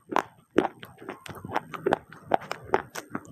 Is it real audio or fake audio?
real